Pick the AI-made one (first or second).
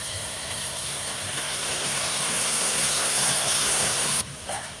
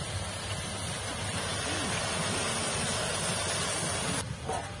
first